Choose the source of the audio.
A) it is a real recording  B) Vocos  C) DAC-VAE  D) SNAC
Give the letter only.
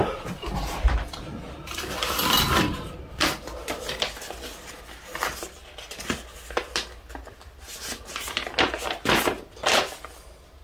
A